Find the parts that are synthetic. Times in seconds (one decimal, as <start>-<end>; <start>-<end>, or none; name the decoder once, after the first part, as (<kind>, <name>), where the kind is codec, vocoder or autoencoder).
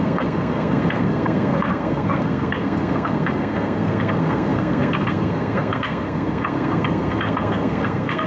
0.0-8.3 (codec, SNAC)